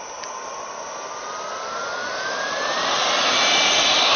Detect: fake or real real